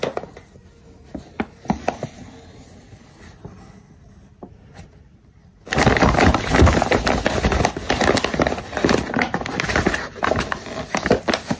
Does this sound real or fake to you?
real